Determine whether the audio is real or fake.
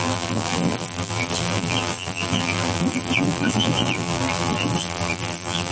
fake